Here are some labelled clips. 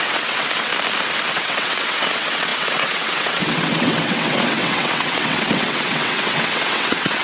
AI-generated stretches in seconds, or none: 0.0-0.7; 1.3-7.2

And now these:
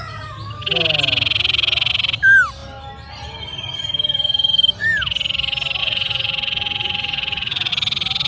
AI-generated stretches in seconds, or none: 5.8-7.7

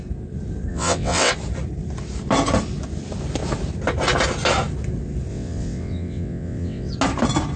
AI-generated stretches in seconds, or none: 0.7-1.3; 5.3-6.9

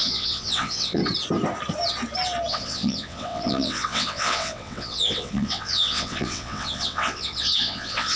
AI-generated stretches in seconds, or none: 0.0-1.0; 2.5-8.2

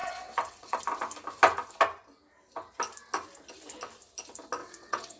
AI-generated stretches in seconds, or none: 0.0-0.8; 4.6-5.2

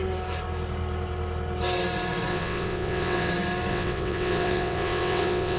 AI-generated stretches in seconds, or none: 2.3-3.3; 3.7-5.6

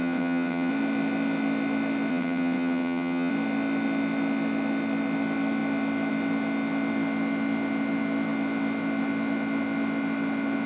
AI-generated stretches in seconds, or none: 0.0-0.7; 2.1-3.3

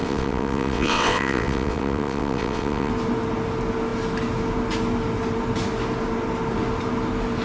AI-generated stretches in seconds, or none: 0.0-2.9